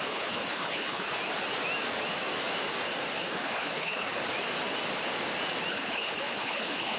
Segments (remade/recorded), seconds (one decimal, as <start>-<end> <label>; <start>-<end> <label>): 0.0-1.2 remade; 1.2-3.2 recorded; 3.2-4.2 remade; 4.2-5.7 recorded; 5.7-7.0 remade